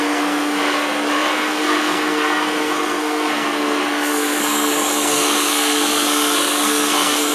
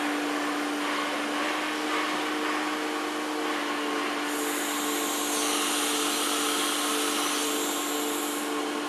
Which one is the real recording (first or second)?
second